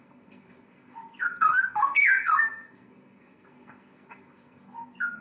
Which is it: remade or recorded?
remade